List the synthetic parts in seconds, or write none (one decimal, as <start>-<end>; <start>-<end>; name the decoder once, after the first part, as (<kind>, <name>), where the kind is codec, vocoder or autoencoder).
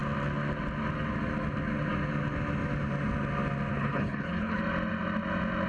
3.7-4.6 (codec, HILCodec)